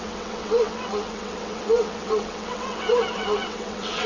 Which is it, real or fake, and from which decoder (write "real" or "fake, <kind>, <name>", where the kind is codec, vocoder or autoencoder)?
fake, vocoder, WaveNeXt